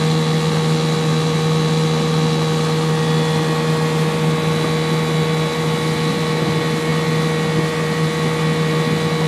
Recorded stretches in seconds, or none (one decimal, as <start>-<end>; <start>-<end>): 0.0-9.3